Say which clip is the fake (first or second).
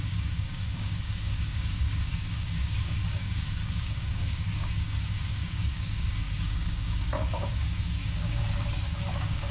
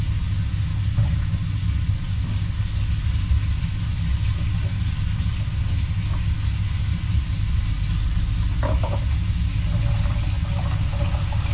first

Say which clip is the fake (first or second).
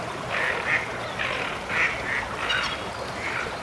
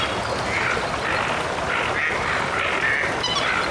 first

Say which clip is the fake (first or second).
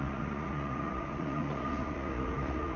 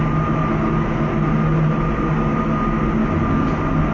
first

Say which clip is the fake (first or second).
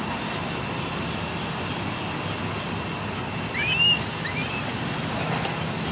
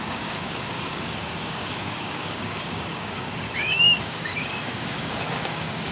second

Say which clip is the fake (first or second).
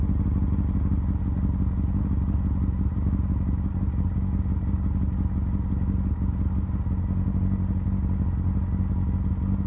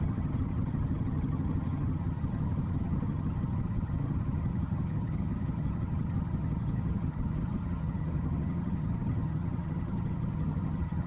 second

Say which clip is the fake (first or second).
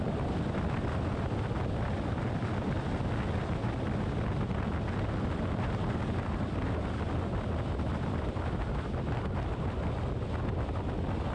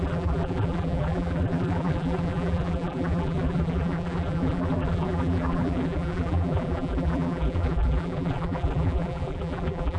second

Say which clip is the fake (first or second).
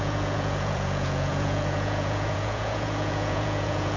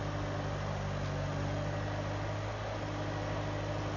first